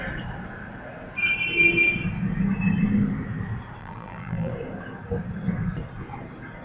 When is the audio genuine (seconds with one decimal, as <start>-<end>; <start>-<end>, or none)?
0.0-3.8; 4.5-6.6